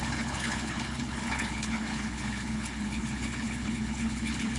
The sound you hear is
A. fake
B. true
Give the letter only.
A